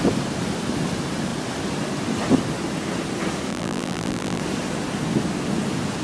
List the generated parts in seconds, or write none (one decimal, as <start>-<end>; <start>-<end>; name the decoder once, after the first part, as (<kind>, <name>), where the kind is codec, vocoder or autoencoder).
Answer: 3.5-4.4 (vocoder, BigVGAN v2)